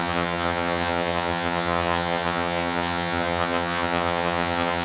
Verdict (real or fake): fake